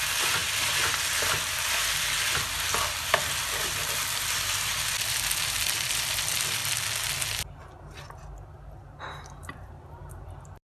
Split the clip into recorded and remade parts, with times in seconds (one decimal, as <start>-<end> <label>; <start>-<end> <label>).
0.0-6.6 remade; 6.6-9.5 recorded; 9.5-10.8 remade